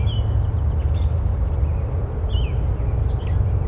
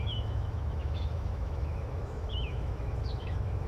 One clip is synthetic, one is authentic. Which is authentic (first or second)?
first